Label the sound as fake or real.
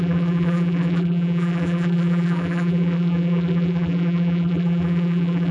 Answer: fake